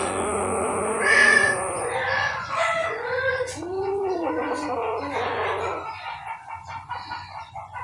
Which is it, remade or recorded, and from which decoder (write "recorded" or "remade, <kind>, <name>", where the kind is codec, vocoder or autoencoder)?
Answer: remade, vocoder, Vocos